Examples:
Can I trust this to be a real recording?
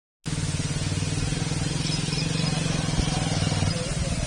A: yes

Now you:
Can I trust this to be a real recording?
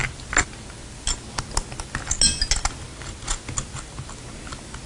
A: yes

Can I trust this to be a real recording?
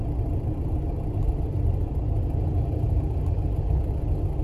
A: yes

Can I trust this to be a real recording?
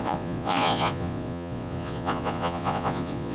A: no